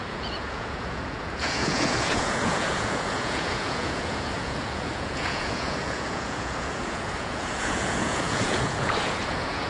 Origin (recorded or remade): remade